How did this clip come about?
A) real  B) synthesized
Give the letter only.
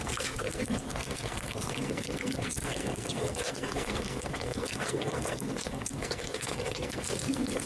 B